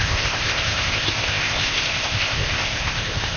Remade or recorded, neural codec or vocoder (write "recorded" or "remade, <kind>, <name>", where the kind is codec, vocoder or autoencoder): remade, codec, ZipCodec